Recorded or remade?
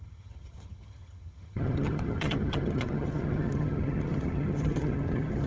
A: remade